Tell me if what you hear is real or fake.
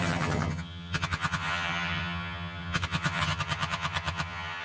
fake